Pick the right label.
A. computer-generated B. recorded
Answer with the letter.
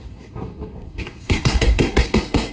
A